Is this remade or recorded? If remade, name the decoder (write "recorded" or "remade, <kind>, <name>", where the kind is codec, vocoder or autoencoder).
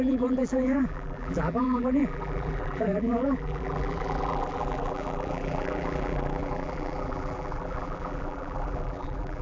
remade, vocoder, BigVGAN v2